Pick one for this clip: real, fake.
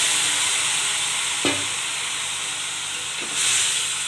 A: real